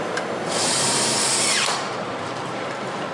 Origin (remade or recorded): remade